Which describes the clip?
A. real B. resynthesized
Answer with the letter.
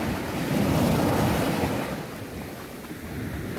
A